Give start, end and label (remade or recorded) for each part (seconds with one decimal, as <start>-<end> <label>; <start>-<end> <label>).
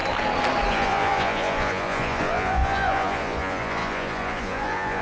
0.0-0.7 recorded; 0.7-5.0 remade